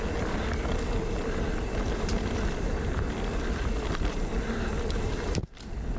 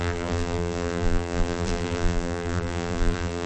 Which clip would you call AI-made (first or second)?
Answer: second